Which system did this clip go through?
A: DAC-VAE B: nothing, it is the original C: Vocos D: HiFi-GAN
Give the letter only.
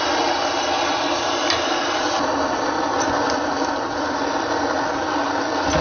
B